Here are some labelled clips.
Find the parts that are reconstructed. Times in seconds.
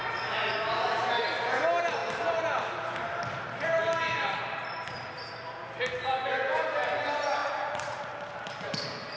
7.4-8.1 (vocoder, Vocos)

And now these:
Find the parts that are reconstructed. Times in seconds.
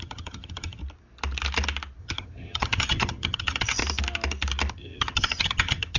0.0-0.8 (vocoder, HiFi-GAN); 2.0-3.8; 4.7-6.0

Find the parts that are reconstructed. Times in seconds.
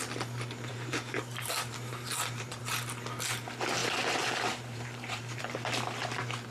0.7-2.6 (vocoder, BigVGAN v2); 3.8-5.4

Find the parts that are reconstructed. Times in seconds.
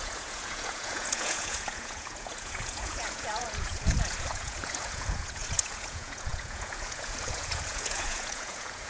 0.0-8.9 (vocoder, Vocos)